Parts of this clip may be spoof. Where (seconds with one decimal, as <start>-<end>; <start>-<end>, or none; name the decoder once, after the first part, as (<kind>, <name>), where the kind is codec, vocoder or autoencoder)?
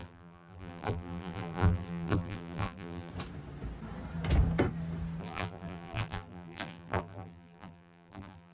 0.0-3.1 (vocoder, BigVGAN v2); 5.2-8.5